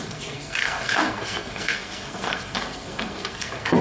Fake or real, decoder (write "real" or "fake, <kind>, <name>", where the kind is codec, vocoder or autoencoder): fake, codec, SNAC